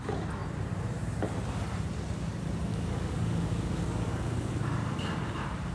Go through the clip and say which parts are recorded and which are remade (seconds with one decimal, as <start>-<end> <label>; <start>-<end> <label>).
0.0-2.7 recorded; 2.7-4.5 remade; 4.5-5.7 recorded

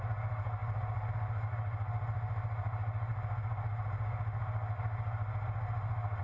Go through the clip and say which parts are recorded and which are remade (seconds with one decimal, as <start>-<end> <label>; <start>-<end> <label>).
0.0-6.2 recorded

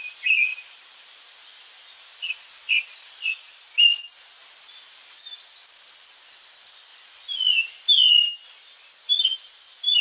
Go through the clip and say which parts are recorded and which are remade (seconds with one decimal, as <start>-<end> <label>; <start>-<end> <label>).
0.0-4.4 recorded; 4.4-5.2 remade; 5.2-10.0 recorded

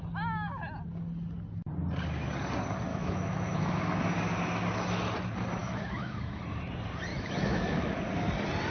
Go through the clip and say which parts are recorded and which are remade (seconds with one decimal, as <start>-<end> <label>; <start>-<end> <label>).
0.0-2.9 recorded; 2.9-3.8 remade; 3.8-5.6 recorded; 5.6-6.4 remade; 6.4-7.1 recorded; 7.1-7.9 remade; 7.9-8.7 recorded

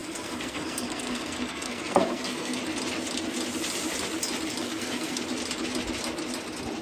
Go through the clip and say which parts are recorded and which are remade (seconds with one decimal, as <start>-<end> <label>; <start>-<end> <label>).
0.0-2.6 remade; 2.6-4.6 recorded; 4.6-5.2 remade; 5.2-6.8 recorded

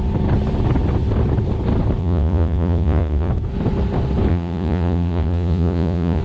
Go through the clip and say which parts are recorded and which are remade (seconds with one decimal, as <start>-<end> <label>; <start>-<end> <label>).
0.0-2.0 recorded; 2.0-3.3 remade; 3.3-4.3 recorded; 4.3-6.2 remade

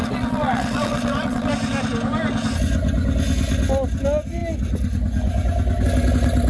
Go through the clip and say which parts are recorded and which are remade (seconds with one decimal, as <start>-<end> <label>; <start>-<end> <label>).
0.0-1.5 remade; 1.5-6.5 recorded

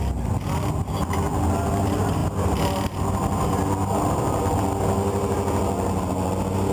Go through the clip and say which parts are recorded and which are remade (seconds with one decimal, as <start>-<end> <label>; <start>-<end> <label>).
0.0-2.2 recorded; 2.2-4.4 remade; 4.4-6.7 recorded